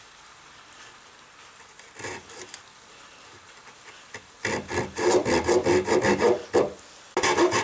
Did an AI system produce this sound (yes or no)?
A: no